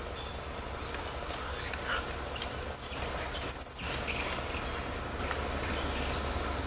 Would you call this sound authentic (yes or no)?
yes